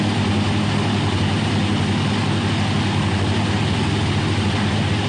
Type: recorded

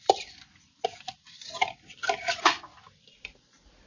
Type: recorded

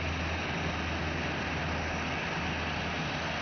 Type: recorded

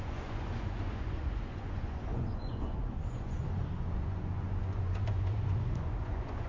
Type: remade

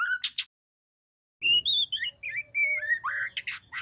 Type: recorded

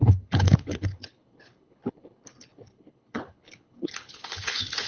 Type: remade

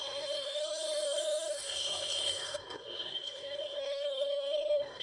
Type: remade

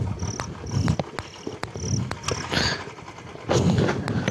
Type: recorded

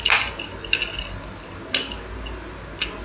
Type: recorded